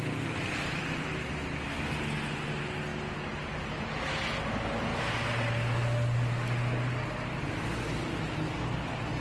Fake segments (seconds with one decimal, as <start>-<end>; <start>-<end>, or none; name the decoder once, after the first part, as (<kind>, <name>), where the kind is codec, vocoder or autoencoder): none